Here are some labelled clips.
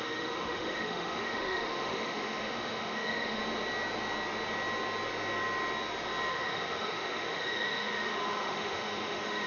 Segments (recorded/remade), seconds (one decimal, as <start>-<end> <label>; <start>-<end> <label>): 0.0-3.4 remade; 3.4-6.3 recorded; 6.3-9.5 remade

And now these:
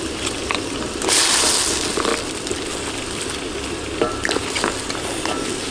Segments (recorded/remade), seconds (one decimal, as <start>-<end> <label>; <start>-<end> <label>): 0.0-5.7 recorded

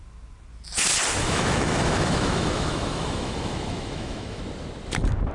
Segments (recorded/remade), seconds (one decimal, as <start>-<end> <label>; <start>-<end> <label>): 0.0-1.2 recorded; 1.2-4.4 remade; 4.4-5.3 recorded

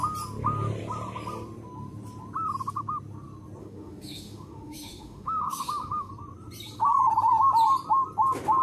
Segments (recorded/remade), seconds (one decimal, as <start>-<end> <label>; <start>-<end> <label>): 0.0-3.6 recorded; 3.6-6.1 remade; 6.1-8.6 recorded

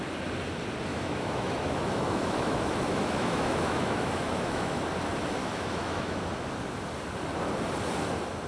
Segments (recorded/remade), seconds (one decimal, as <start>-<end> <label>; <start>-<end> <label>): 0.0-0.9 recorded; 0.9-4.8 remade; 4.8-5.4 recorded; 5.4-6.2 remade; 6.2-8.5 recorded